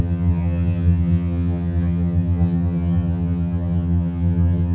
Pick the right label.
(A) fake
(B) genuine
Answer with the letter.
A